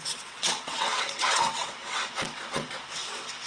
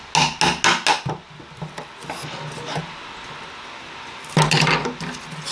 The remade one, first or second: first